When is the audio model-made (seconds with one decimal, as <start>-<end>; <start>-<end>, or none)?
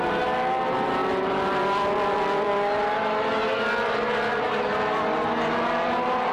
1.0-2.5